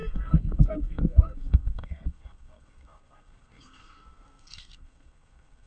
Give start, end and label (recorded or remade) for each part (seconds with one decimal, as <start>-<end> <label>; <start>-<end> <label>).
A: 0.0-5.7 remade